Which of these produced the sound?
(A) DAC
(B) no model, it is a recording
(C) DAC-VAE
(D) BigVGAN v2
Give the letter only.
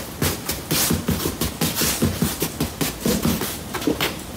B